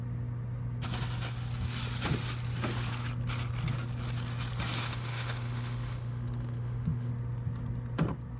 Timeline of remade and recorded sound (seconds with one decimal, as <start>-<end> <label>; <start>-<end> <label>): 0.0-4.8 recorded; 4.8-7.1 remade; 7.1-8.4 recorded